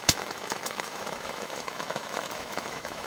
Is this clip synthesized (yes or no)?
yes